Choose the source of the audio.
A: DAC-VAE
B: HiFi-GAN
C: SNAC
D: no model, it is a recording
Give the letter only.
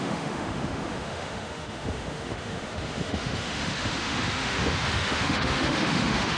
A